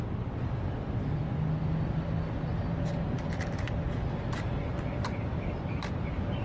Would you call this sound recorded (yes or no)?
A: yes